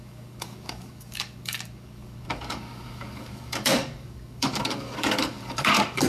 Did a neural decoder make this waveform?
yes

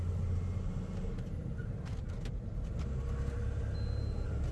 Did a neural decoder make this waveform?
no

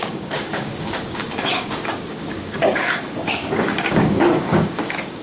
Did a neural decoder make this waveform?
yes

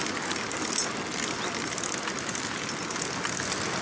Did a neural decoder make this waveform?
no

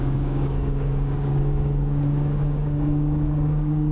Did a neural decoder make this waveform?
yes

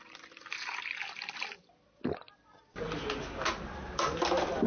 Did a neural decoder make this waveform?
no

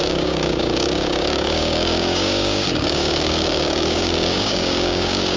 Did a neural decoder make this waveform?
yes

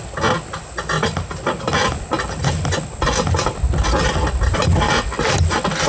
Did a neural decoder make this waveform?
no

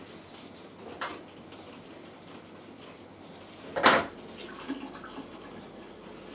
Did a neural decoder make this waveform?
no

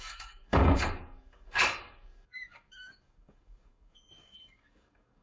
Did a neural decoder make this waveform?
yes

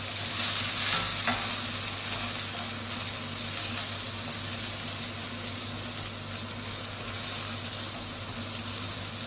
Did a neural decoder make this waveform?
no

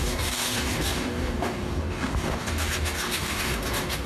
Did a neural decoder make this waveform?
yes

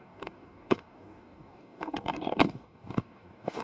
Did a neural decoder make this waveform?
yes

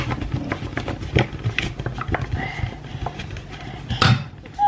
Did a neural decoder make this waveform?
no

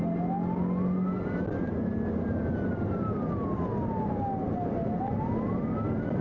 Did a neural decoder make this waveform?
no